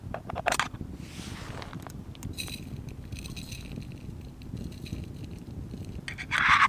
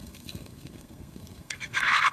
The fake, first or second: second